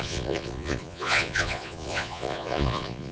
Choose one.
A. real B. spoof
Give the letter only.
B